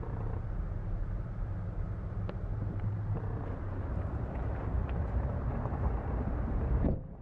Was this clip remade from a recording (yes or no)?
yes